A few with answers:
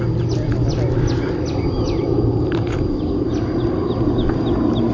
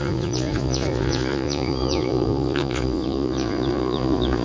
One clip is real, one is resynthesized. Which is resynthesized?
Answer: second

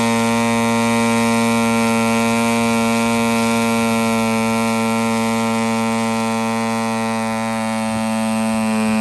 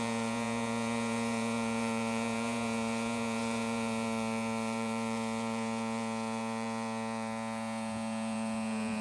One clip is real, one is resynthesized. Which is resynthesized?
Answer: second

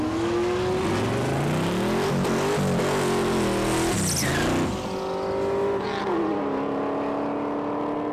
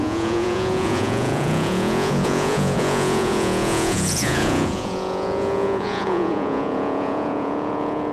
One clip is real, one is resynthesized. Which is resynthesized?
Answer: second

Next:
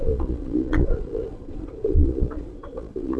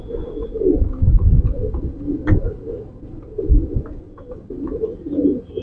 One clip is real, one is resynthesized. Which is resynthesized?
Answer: first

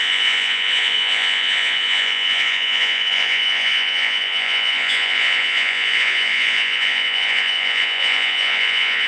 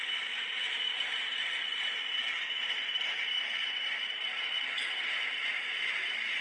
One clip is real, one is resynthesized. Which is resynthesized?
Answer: first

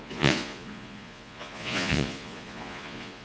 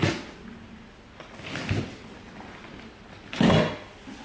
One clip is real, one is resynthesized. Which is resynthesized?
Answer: first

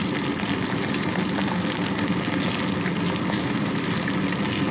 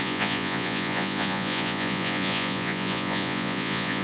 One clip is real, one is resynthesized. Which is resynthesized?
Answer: second